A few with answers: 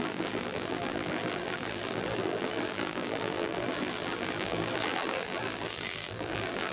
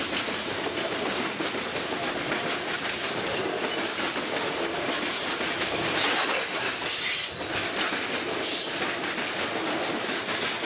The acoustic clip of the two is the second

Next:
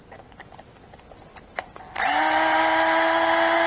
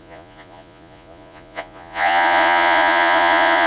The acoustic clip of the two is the first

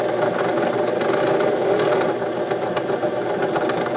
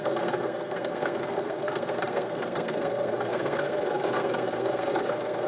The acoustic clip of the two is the first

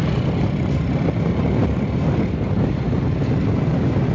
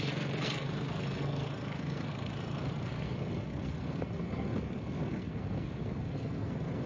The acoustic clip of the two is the first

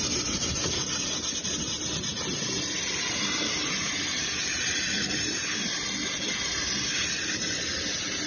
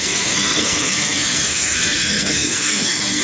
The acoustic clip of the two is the first